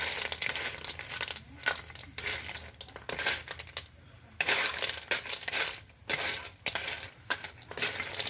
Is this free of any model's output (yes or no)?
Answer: yes